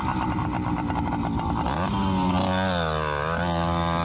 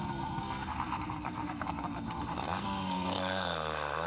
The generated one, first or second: second